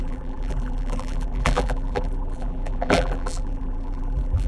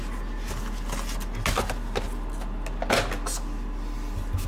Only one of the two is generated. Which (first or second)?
first